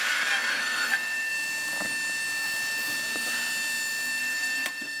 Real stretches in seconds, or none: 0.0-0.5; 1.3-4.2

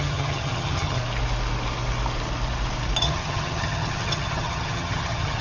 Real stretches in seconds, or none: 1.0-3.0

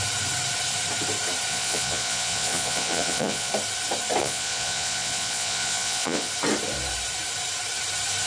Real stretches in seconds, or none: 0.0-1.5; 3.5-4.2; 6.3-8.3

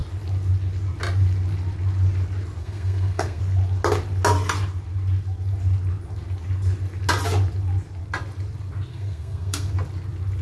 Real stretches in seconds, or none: 0.0-2.6; 3.4-8.9; 9.7-10.4

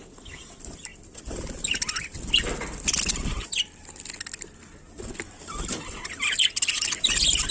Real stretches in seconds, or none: 0.0-7.5

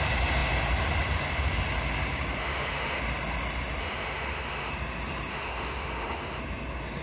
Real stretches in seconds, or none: 0.0-2.4; 3.0-3.8; 4.7-5.3; 6.4-7.0

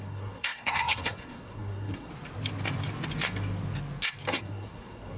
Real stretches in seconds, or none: 2.1-4.4